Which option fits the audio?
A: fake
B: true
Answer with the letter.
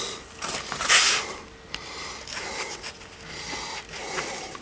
B